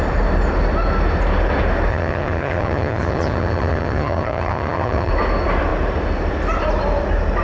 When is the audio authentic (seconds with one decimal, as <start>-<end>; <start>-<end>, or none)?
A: 0.0-1.9; 5.1-7.4